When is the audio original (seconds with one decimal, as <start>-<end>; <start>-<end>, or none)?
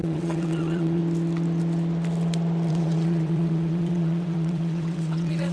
1.0-2.7